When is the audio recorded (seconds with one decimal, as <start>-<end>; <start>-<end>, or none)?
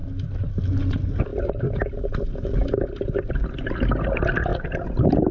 0.0-5.3